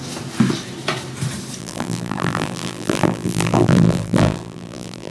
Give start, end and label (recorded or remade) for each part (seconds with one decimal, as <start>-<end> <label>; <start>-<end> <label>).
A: 0.0-1.6 recorded; 1.6-5.1 remade